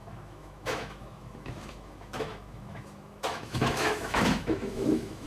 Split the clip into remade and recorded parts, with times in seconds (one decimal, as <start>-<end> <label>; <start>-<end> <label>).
0.0-5.3 remade